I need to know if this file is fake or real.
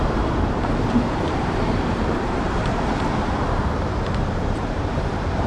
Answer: fake